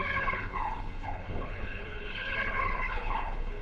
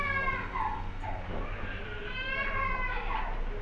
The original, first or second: second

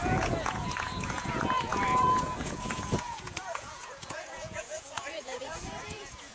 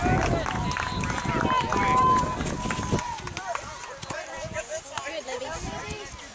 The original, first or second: second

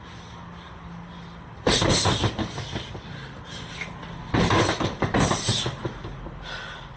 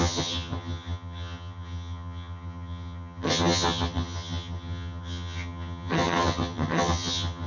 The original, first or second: first